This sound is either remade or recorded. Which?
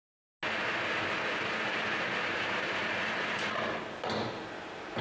recorded